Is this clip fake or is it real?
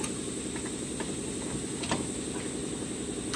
real